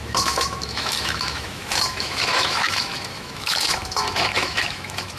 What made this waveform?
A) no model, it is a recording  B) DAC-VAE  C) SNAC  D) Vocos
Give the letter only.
B